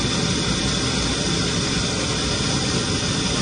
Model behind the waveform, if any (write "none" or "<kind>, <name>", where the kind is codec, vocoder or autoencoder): none